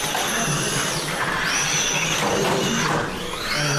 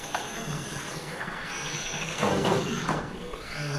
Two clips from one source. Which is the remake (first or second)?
second